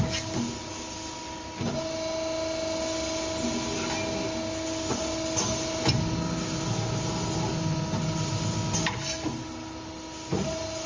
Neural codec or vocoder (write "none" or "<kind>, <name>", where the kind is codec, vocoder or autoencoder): none